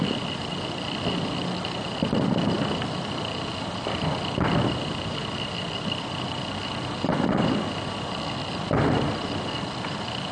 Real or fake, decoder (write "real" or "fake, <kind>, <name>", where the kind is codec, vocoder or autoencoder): real